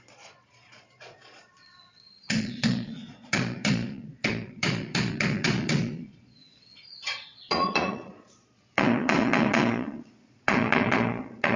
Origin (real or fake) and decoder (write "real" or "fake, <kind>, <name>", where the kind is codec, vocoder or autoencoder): fake, vocoder, Vocos